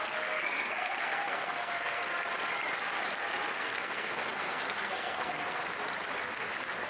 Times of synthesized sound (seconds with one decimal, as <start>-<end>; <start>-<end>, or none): 0.0-2.0; 3.5-5.6